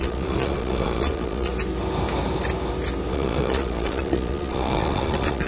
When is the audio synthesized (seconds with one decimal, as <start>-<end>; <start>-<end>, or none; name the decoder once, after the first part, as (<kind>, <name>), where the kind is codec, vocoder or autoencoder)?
0.0-1.5 (vocoder, Vocos); 3.1-5.5